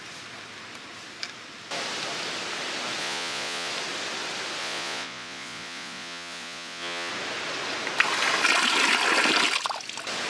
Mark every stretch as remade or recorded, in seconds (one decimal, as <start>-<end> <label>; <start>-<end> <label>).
0.0-3.0 recorded; 3.0-3.7 remade; 3.7-4.6 recorded; 4.6-7.1 remade; 7.1-10.3 recorded